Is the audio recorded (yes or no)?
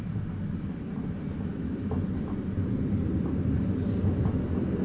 yes